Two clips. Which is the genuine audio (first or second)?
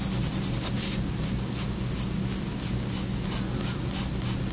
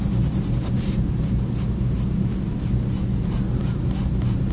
first